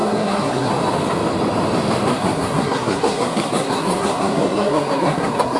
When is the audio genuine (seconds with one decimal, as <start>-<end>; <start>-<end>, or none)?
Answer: 0.7-2.1